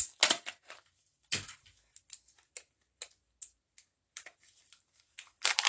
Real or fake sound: real